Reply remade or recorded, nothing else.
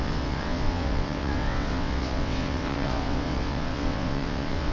remade